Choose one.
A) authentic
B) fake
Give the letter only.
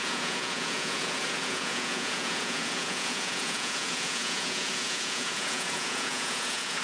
B